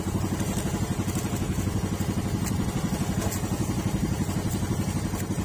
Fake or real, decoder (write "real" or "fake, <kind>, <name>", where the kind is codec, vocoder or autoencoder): real